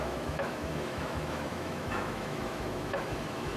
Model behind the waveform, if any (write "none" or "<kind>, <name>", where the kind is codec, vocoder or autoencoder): autoencoder, DAC-VAE